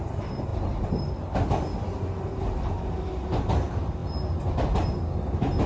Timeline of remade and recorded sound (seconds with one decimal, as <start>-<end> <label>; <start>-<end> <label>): 0.0-5.7 recorded